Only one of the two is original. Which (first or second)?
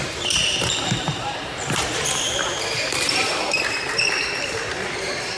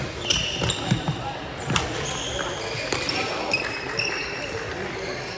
second